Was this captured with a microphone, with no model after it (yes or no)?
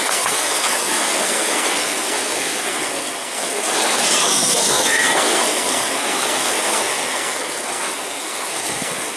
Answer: no